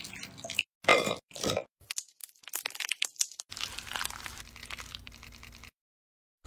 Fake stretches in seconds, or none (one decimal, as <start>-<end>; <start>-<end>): 0.9-1.5; 2.2-3.5